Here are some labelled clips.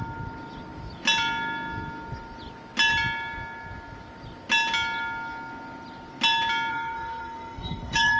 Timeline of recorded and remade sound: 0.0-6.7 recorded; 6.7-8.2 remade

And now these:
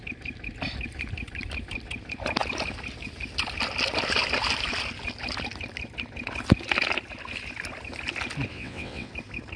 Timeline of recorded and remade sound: 0.0-8.5 recorded; 8.5-9.1 remade; 9.1-9.6 recorded

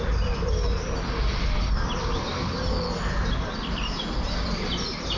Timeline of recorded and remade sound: 0.0-5.2 recorded

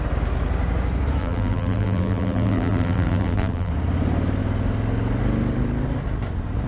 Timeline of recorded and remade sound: 0.0-1.2 recorded; 1.2-3.7 remade; 3.7-6.7 recorded

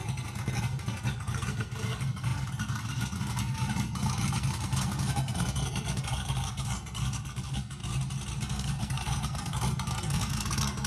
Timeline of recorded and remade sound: 0.0-7.8 remade; 7.8-8.4 recorded; 8.4-10.9 remade

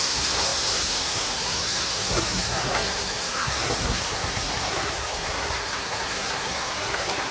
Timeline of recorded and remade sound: 0.0-7.3 remade